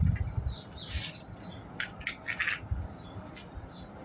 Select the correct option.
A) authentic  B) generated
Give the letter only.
A